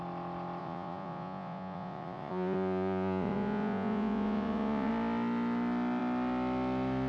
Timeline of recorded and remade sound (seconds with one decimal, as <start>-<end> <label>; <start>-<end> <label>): 0.0-0.6 recorded; 0.6-4.9 remade; 4.9-7.1 recorded